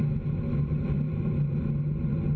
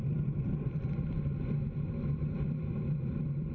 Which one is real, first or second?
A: first